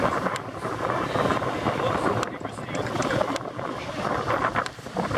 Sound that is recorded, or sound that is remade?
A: recorded